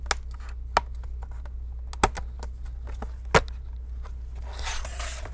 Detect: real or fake real